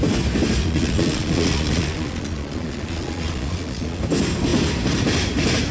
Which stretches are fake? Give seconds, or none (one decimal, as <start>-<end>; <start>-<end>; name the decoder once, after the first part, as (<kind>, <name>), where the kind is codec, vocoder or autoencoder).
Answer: 0.6-4.0 (vocoder, Vocos)